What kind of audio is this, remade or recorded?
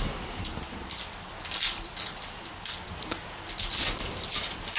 recorded